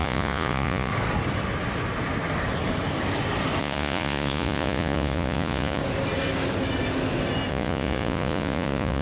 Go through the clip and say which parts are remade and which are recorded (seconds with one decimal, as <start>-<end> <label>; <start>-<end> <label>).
0.0-0.9 remade; 0.9-3.6 recorded; 3.6-5.8 remade; 5.8-7.5 recorded; 7.5-9.0 remade

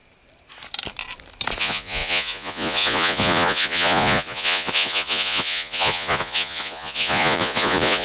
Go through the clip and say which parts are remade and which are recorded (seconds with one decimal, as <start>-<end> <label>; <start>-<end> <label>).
0.0-1.6 recorded; 1.6-8.0 remade

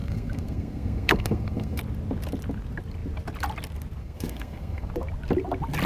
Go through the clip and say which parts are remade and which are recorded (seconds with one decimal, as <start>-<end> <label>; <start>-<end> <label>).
0.0-1.8 remade; 1.8-4.0 recorded; 4.0-4.9 remade; 4.9-5.9 recorded